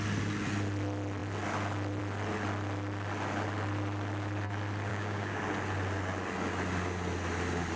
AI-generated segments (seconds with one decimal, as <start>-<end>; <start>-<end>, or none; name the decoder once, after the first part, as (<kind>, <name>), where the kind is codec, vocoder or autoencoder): 4.9-5.4 (codec, DAC)